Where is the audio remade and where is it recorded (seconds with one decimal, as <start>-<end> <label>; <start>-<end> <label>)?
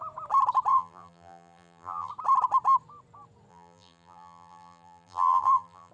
0.0-0.7 recorded; 0.7-2.1 remade; 2.1-3.5 recorded; 3.5-5.9 remade